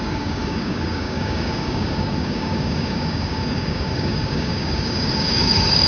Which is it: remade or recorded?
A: remade